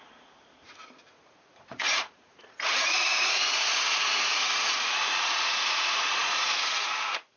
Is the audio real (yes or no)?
no